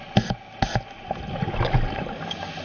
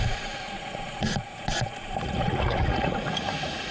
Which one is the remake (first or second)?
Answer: second